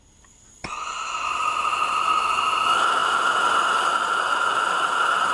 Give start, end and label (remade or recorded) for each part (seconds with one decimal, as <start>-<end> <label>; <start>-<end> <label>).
0.0-5.3 recorded